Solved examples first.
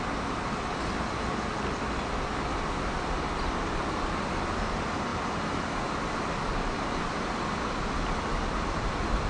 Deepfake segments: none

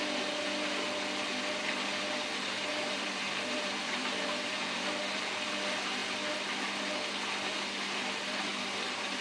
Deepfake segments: 2.7-4.9

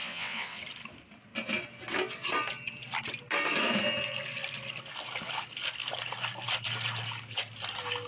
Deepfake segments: 0.0-0.6

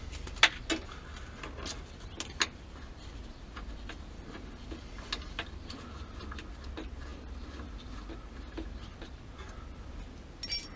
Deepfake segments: none